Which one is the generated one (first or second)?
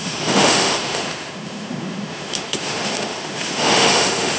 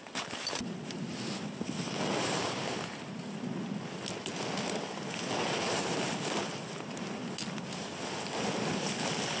first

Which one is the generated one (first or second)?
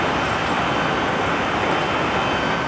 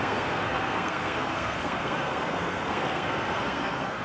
second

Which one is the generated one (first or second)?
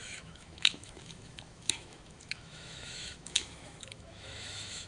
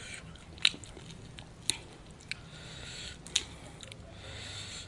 first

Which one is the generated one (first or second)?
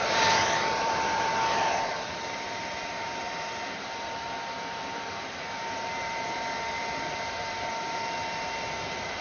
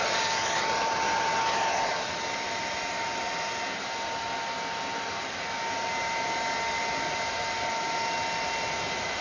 first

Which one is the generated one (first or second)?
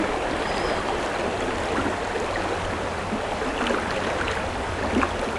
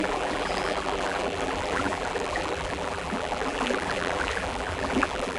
second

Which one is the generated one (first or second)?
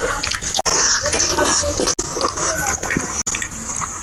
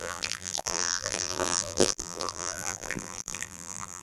second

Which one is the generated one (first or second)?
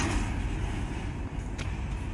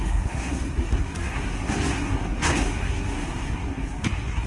second